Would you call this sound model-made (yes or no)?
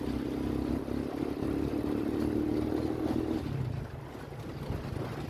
no